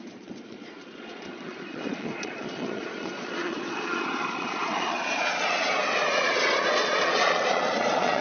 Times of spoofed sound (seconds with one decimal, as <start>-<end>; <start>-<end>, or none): 0.0-8.2